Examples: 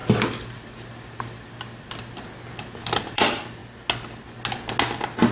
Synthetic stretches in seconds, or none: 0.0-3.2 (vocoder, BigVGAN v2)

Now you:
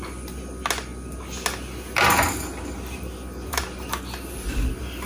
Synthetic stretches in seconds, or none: none

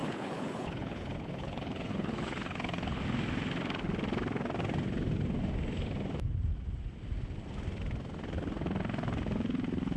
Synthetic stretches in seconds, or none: 0.0-3.0 (codec, HILCodec)

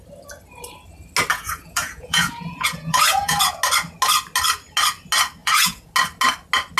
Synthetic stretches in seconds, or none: 1.3-3.5 (vocoder, Vocos); 5.4-5.9

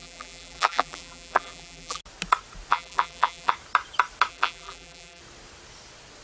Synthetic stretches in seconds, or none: 0.0-2.0 (vocoder, BigVGAN v2); 2.7-3.5; 4.3-5.2

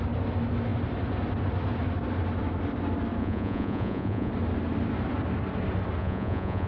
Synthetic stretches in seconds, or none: 3.2-4.3 (vocoder, Vocos); 6.0-6.7

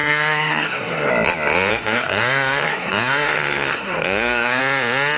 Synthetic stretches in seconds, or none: 0.0-1.1 (codec, SNAC); 1.7-4.6